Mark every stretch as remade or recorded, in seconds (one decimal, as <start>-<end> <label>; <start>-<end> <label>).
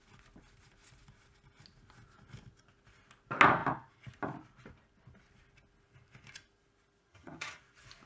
0.0-7.1 recorded; 7.1-7.6 remade; 7.6-8.1 recorded